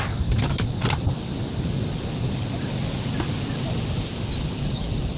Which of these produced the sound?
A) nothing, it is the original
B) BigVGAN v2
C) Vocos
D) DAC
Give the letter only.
A